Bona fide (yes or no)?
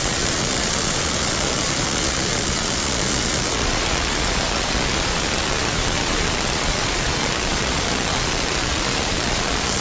no